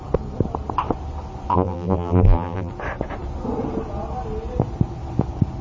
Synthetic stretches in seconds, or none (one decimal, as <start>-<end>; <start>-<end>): 1.5-2.7